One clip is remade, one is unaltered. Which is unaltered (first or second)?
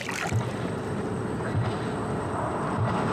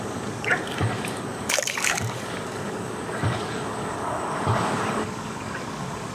first